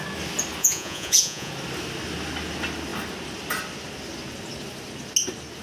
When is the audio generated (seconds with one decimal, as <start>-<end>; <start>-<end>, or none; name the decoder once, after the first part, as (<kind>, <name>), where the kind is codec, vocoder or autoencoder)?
0.6-1.5 (vocoder, Vocos)

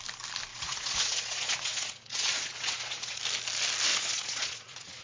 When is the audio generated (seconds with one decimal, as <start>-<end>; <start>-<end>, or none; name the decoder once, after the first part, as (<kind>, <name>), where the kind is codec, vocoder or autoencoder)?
0.5-3.2 (vocoder, Vocos); 3.9-5.0

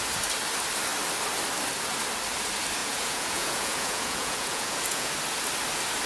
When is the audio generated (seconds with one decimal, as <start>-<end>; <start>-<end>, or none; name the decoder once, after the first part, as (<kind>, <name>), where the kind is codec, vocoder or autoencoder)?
2.8-5.1 (vocoder, Vocos)

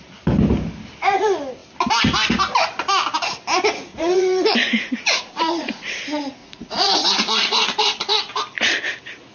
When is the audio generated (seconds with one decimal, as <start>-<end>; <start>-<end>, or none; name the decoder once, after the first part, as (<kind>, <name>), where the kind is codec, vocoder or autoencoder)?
3.9-6.0 (vocoder, Vocos); 6.4-8.3

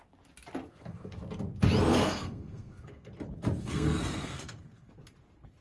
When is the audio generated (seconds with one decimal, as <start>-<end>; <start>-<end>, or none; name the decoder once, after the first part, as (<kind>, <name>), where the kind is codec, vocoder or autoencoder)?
0.7-1.2 (codec, SNAC); 1.9-3.1; 3.6-4.9

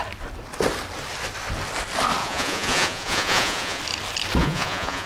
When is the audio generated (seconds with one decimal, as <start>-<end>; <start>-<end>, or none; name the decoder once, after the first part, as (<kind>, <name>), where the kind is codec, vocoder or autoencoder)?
2.2-3.8 (vocoder, Vocos); 4.4-5.1